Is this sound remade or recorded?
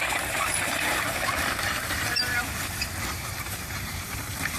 remade